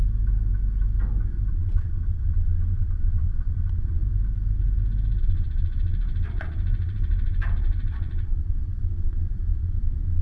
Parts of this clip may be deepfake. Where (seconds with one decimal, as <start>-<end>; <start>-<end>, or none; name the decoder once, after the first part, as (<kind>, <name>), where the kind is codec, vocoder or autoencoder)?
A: 1.5-4.0 (vocoder, Vocos); 5.2-10.2